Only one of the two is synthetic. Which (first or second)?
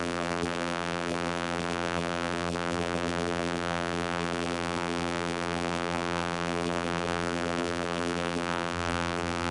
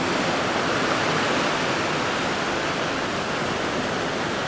first